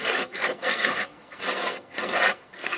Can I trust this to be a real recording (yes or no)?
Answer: no